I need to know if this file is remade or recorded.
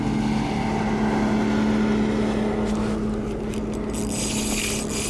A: recorded